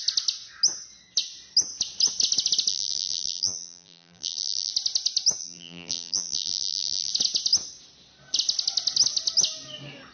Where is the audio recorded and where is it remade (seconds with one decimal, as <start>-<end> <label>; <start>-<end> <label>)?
0.0-2.7 recorded; 2.7-4.7 remade; 4.7-5.4 recorded; 5.4-7.1 remade; 7.1-10.1 recorded